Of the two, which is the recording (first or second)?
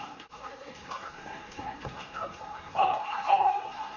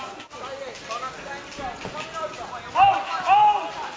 second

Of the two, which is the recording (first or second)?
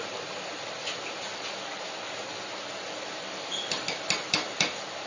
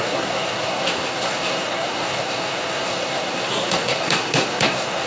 first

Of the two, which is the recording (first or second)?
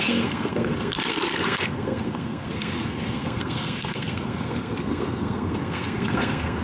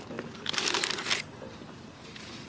second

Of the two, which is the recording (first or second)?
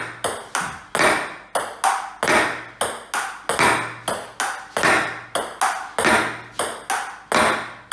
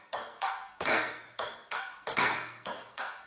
first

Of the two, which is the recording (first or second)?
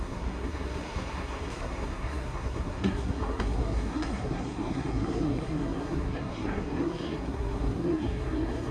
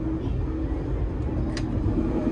second